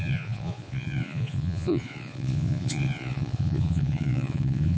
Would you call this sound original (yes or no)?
no